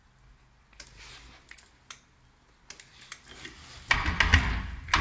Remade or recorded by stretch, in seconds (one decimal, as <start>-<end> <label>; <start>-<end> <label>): 0.0-5.0 recorded